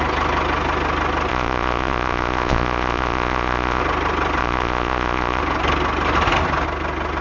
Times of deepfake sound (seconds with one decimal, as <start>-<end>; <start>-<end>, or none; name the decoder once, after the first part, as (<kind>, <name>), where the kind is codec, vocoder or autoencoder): 1.3-3.8 (vocoder, Vocos); 4.4-5.4